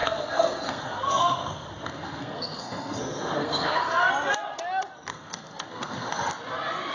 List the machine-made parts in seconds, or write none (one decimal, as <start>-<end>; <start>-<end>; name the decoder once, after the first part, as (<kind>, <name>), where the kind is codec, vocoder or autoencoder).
0.0-4.1 (codec, SNAC); 5.1-6.3